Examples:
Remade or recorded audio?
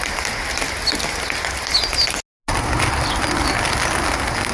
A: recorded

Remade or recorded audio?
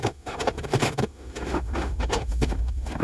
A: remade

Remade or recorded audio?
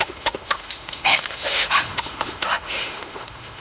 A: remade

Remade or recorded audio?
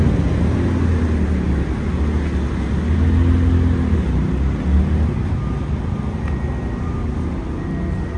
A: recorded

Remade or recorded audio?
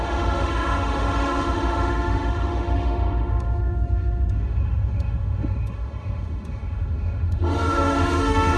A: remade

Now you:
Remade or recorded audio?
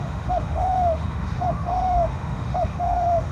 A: remade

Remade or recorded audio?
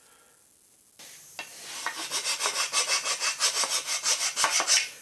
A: recorded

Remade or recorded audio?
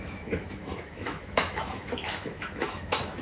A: remade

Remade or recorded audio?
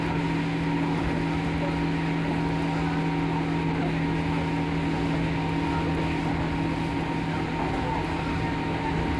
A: recorded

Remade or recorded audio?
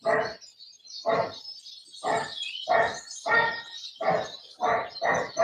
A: recorded